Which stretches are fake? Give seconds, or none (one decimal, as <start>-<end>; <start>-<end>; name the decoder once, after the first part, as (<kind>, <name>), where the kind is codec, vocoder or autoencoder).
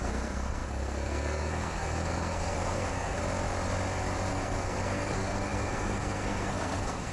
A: 0.0-3.2 (codec, SNAC); 4.3-7.1